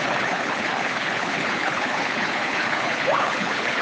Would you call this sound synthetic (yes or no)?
yes